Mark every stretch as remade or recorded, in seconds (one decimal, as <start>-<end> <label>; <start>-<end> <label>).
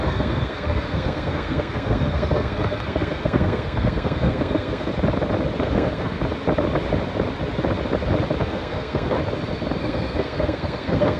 0.0-4.9 remade; 4.9-5.6 recorded; 5.6-6.2 remade; 6.2-8.4 recorded; 8.4-9.2 remade; 9.2-9.8 recorded; 9.8-11.2 remade